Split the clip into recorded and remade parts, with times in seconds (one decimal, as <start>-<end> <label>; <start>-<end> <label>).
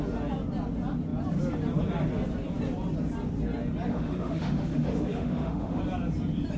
0.0-3.9 recorded; 3.9-5.8 remade; 5.8-6.6 recorded